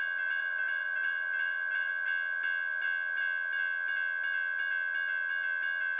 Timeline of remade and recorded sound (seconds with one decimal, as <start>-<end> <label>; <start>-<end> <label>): 0.0-0.4 recorded; 0.4-1.9 remade; 1.9-6.0 recorded